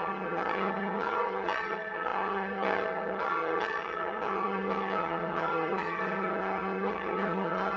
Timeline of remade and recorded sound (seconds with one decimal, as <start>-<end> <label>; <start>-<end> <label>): 0.0-7.8 remade